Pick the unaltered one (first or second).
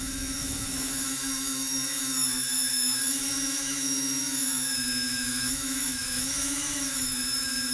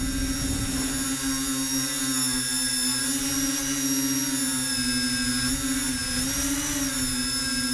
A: second